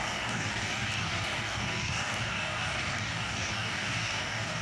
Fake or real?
fake